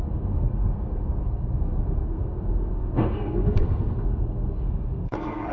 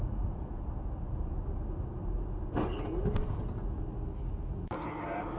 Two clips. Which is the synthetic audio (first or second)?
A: first